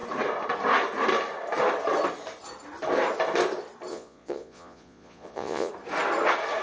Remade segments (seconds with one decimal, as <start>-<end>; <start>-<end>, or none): 3.9-5.7